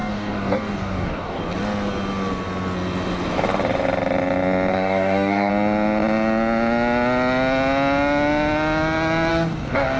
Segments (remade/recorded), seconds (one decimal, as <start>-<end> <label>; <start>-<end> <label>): 0.0-1.4 remade; 1.4-4.7 recorded; 4.7-5.5 remade; 5.5-9.3 recorded; 9.3-10.0 remade